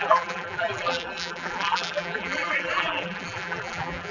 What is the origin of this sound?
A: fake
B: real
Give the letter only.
A